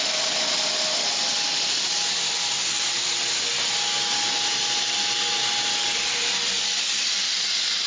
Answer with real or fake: real